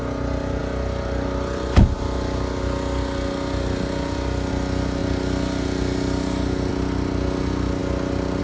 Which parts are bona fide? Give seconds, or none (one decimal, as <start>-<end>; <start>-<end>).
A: 0.0-8.4